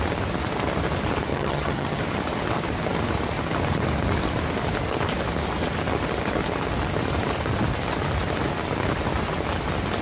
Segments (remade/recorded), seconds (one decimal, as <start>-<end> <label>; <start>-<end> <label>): 0.0-1.3 recorded; 1.3-2.0 remade; 2.0-10.0 recorded